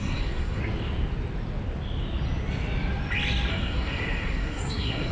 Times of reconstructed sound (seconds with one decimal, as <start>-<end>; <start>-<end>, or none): 0.0-0.6; 3.5-5.1